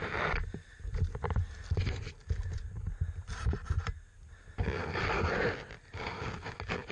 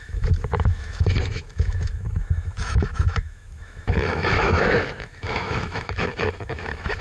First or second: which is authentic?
first